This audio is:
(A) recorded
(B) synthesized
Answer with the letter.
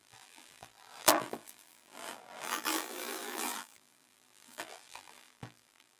B